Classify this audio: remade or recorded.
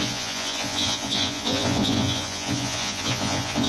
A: remade